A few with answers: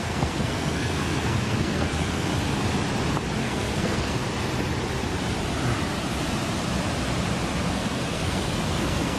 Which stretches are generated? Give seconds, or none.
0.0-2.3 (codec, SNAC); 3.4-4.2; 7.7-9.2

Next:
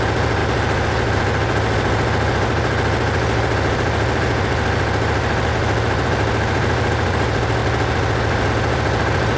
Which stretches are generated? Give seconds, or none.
none

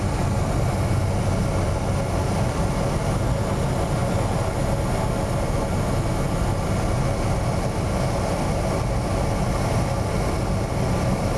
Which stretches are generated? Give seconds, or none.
none

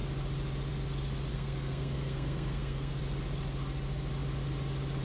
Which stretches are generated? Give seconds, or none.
1.3-3.0 (codec, SNAC)

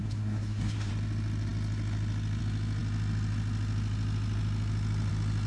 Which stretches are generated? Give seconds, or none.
0.0-0.9 (codec, SNAC)

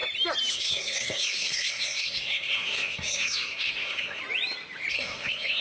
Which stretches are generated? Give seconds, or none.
0.5-4.2 (codec, SNAC); 4.9-5.6

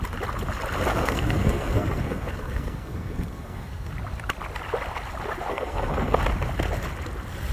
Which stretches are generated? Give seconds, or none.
0.9-3.9 (codec, SNAC); 5.5-6.2

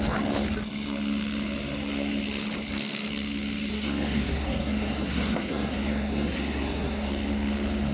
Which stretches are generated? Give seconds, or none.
3.7-7.1 (codec, SNAC)